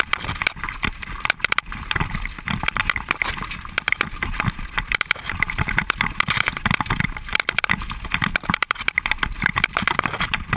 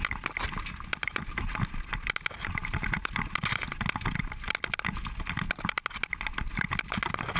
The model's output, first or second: first